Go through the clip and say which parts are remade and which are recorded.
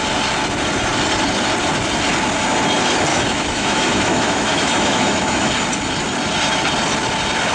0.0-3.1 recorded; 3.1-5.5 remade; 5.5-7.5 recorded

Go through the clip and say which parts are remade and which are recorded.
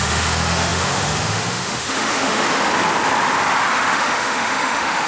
0.0-2.7 remade; 2.7-3.7 recorded; 3.7-5.1 remade